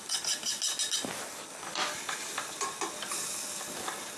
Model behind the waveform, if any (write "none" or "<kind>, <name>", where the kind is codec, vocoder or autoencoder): none